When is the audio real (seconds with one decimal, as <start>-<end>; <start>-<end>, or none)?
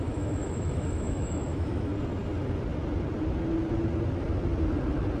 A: 1.9-5.2